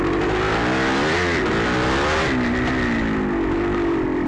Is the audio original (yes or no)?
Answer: yes